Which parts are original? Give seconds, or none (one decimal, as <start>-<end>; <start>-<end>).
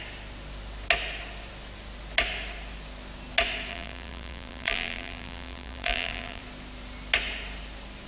0.0-3.7; 6.4-8.1